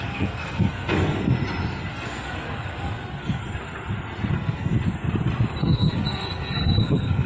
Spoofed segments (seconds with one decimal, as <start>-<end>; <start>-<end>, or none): 0.0-1.2; 1.9-3.4; 4.3-4.7; 5.6-7.3